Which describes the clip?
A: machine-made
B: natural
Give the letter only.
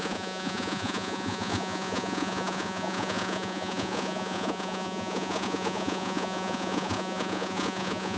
A